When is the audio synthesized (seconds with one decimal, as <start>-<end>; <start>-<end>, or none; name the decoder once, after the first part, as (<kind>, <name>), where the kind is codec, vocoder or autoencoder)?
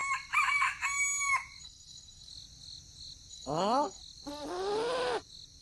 1.6-2.3 (codec, SNAC); 3.3-4.0